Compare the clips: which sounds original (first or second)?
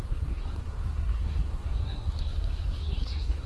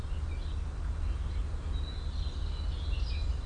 second